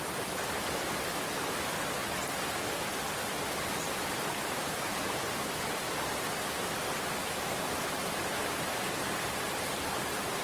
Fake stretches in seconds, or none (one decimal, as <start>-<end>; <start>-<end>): 4.4-5.0